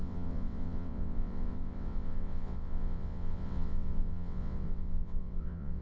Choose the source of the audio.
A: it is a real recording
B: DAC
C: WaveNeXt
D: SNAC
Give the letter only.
C